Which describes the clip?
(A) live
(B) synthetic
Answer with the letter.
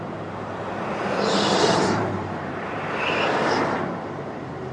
B